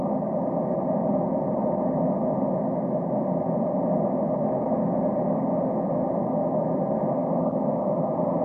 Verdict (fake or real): real